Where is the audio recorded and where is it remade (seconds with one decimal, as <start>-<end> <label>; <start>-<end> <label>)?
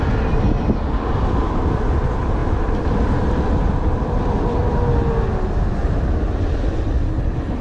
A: 0.0-2.4 remade; 2.4-3.0 recorded; 3.0-4.6 remade; 4.6-5.8 recorded; 5.8-7.6 remade